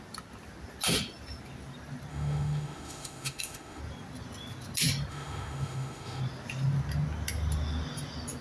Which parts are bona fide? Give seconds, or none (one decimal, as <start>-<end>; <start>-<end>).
0.0-2.1; 3.8-5.1; 6.2-8.4